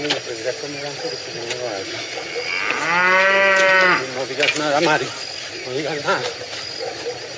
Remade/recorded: recorded